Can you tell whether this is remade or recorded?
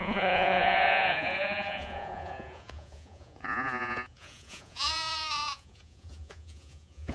remade